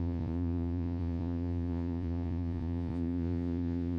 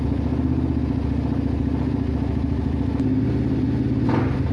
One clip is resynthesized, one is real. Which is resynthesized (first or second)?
first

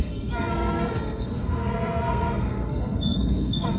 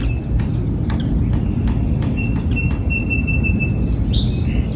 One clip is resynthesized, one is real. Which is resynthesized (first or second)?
first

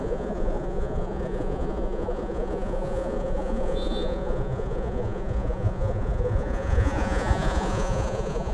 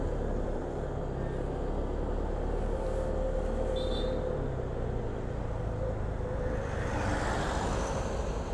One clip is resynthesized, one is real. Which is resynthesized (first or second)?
first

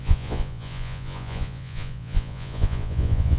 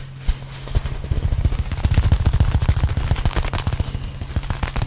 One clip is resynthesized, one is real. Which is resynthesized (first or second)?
first